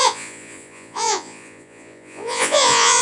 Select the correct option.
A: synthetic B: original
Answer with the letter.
A